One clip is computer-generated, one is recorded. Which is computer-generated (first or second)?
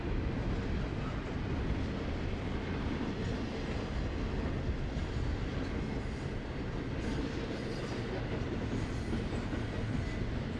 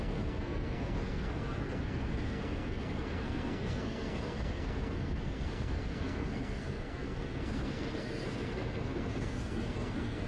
second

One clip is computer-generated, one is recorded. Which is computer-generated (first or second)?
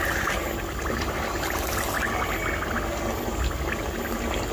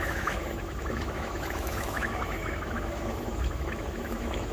second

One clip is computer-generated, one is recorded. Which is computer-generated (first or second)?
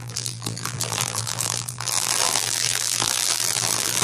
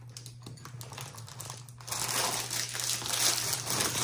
first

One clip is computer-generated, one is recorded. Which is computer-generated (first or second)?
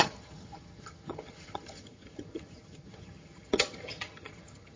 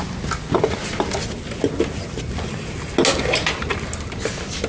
first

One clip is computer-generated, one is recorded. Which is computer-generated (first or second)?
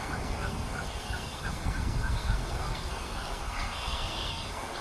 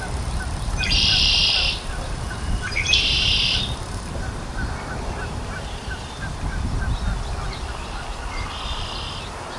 first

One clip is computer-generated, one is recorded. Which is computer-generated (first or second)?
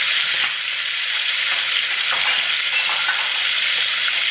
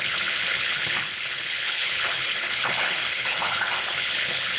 second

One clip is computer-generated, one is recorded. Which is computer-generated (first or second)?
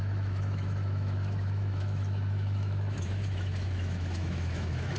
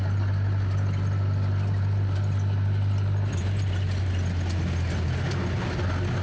first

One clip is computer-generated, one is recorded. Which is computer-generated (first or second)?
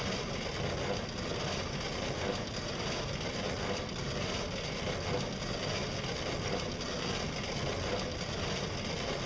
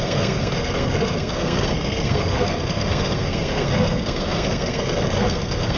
second